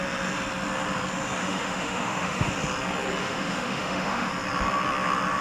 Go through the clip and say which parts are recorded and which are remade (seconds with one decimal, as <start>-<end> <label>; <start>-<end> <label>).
0.0-1.4 recorded; 1.4-2.5 remade; 2.5-3.2 recorded; 3.2-4.3 remade; 4.3-5.4 recorded